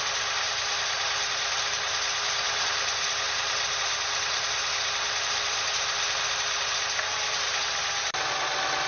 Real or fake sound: real